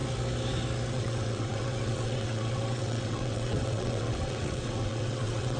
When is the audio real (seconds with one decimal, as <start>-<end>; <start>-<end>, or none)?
0.0-0.9